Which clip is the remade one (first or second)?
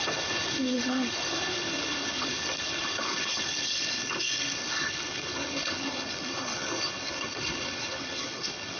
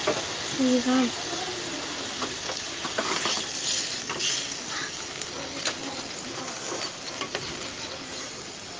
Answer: first